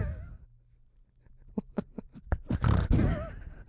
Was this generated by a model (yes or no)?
no